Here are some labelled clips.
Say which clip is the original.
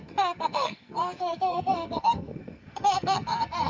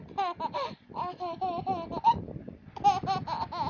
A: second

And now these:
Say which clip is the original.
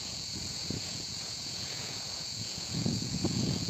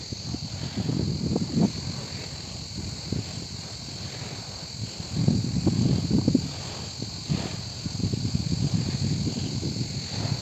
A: second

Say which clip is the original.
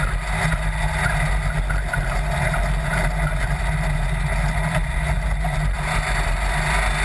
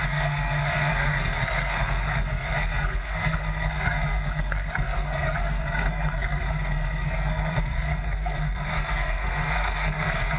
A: first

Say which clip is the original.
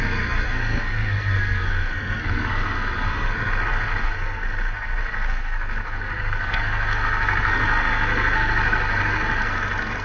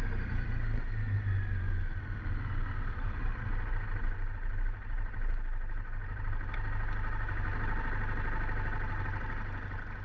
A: second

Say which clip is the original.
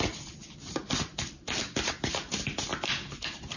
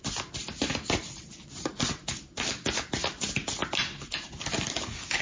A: second